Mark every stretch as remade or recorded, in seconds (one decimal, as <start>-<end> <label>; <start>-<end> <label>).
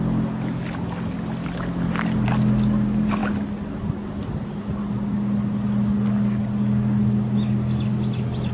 0.0-8.5 recorded